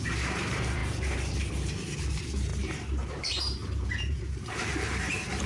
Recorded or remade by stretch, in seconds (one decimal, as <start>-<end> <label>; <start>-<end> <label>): 0.0-0.8 remade; 0.8-2.0 recorded; 2.0-2.5 remade; 2.5-3.1 recorded; 3.1-5.5 remade